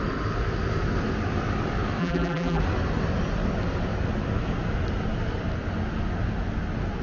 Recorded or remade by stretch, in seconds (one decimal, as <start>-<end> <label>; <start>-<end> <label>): 0.0-2.0 recorded; 2.0-2.6 remade; 2.6-7.0 recorded